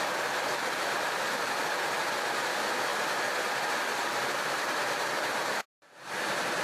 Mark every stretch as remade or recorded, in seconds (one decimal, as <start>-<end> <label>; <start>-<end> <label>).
0.0-0.5 recorded; 0.5-1.6 remade; 1.6-3.9 recorded; 3.9-5.0 remade; 5.0-6.6 recorded